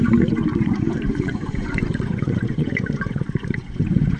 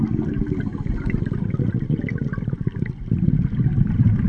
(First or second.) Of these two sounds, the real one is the second